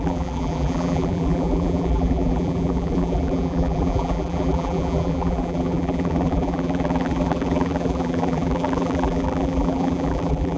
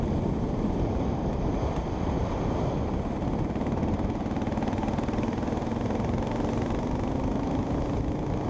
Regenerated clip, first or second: first